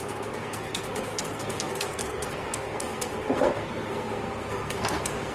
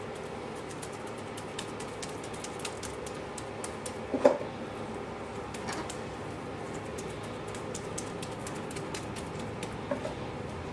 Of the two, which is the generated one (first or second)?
first